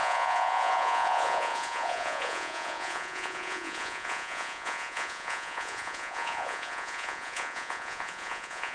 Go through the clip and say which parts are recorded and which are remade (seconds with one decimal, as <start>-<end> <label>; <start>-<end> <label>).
0.0-8.7 remade